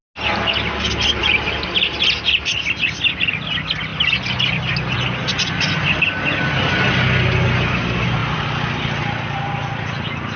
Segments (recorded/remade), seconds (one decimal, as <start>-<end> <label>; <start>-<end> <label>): 0.0-1.2 recorded; 1.2-2.5 remade; 2.5-8.2 recorded; 8.2-8.8 remade; 8.8-10.4 recorded